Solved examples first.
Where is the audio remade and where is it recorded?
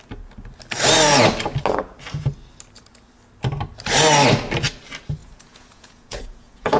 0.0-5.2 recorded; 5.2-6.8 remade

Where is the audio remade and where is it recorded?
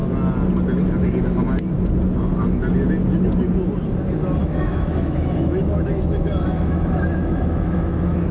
0.0-4.4 recorded; 4.4-8.3 remade